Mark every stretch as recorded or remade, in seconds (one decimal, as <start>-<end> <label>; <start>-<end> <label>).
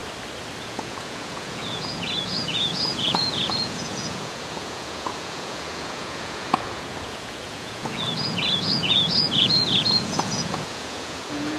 0.0-0.6 recorded; 0.6-11.6 remade